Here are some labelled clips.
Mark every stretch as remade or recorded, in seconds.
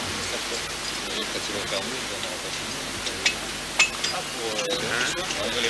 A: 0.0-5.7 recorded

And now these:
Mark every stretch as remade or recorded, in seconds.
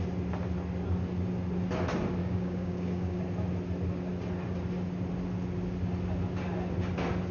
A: 0.0-2.2 recorded; 2.2-3.2 remade; 3.2-7.3 recorded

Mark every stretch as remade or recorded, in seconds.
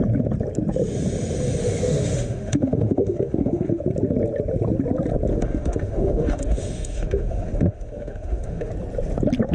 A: 0.0-1.6 recorded; 1.6-3.8 remade; 3.8-5.3 recorded; 5.3-8.7 remade; 8.7-9.5 recorded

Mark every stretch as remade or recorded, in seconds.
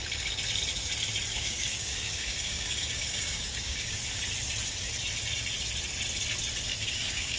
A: 0.0-1.3 recorded; 1.3-4.0 remade; 4.0-6.7 recorded; 6.7-7.4 remade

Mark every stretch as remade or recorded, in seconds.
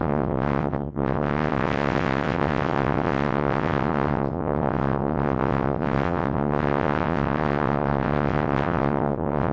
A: 0.0-9.5 remade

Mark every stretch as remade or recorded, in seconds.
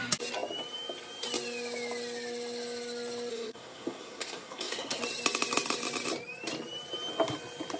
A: 0.0-3.3 recorded; 3.3-5.0 remade; 5.0-7.8 recorded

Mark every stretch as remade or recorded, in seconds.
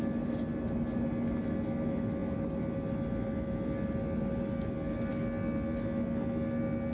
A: 0.0-6.9 recorded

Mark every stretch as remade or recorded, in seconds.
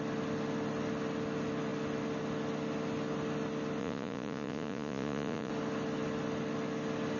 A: 0.0-3.8 recorded; 3.8-5.5 remade; 5.5-7.2 recorded